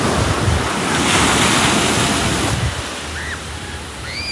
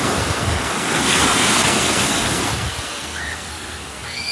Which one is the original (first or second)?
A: first